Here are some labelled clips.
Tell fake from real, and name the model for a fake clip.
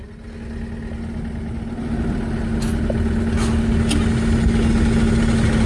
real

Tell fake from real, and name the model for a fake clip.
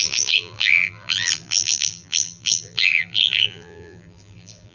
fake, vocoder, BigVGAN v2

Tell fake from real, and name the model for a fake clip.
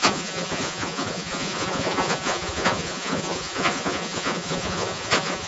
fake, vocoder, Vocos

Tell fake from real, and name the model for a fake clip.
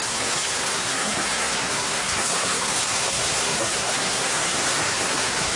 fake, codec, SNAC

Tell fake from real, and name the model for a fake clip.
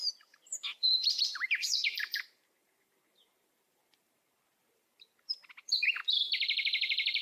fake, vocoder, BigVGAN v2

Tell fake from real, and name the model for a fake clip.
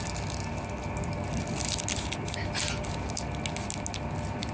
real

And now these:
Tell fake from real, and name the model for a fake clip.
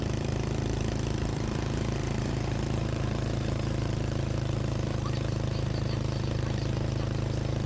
fake, vocoder, BigVGAN v2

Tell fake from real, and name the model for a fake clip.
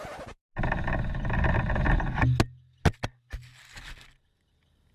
real